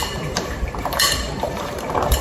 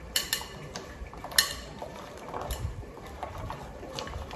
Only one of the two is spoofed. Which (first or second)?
first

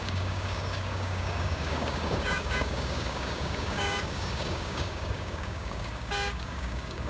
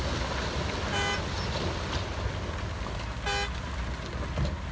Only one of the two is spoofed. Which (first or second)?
first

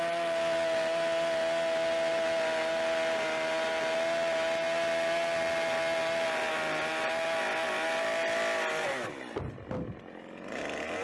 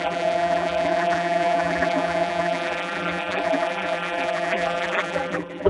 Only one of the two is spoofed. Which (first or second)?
second